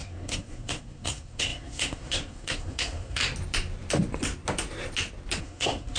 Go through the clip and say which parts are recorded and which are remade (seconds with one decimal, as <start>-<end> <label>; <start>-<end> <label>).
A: 0.0-3.2 remade; 3.2-5.4 recorded; 5.4-6.0 remade